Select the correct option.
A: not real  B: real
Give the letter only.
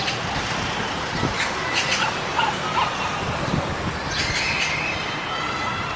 B